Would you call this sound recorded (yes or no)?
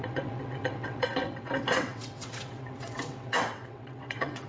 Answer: no